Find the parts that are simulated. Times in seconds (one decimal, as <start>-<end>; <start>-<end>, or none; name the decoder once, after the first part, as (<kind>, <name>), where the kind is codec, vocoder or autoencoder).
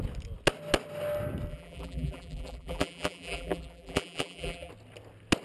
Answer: 1.5-4.7 (vocoder, BigVGAN v2)